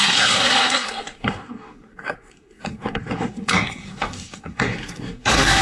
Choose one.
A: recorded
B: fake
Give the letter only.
B